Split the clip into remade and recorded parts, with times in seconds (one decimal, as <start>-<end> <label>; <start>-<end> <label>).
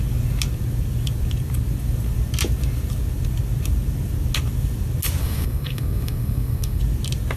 0.0-5.2 recorded; 5.2-6.8 remade; 6.8-7.4 recorded